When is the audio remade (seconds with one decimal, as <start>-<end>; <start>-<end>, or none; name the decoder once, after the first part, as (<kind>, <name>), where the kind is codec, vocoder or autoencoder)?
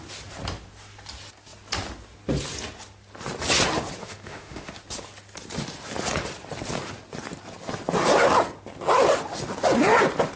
4.0-4.7 (autoencoder, DAC-VAE)